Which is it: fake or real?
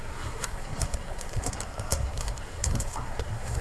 fake